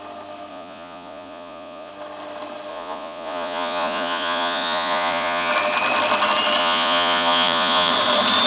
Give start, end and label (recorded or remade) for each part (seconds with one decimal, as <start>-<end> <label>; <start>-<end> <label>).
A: 0.0-0.5 recorded; 0.5-1.9 remade; 1.9-2.7 recorded; 2.7-5.5 remade; 5.5-6.6 recorded; 6.6-7.9 remade; 7.9-8.5 recorded